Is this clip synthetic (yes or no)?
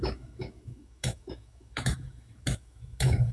yes